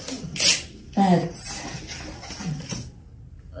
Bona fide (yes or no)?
yes